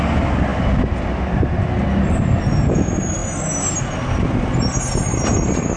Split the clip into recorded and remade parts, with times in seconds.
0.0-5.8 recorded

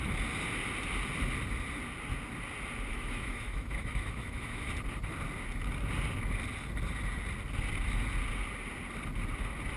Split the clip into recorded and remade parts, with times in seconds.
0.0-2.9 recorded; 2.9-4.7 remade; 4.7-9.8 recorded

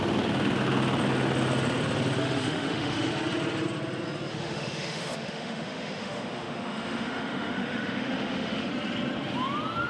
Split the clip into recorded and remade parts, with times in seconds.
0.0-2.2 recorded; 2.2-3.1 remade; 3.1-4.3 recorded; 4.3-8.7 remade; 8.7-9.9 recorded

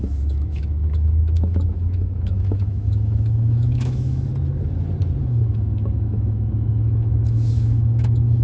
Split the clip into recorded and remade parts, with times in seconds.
0.0-4.3 remade; 4.3-5.2 recorded; 5.2-8.4 remade